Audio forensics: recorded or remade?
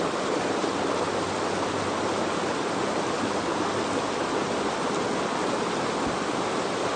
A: recorded